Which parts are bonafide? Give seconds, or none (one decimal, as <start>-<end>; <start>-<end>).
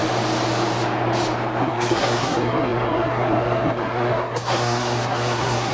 0.0-1.6